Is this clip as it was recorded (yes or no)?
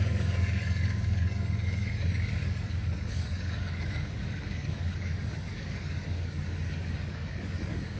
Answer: no